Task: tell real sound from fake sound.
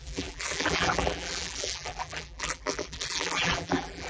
fake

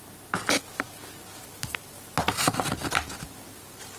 real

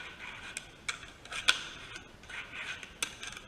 real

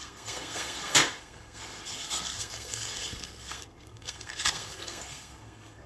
fake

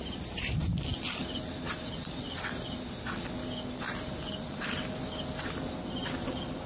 real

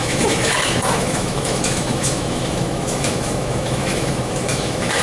fake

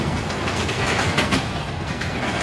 fake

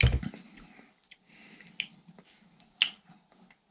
real